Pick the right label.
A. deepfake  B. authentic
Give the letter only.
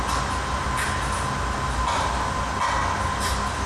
B